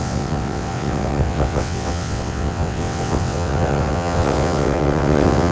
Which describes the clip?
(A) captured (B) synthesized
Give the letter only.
B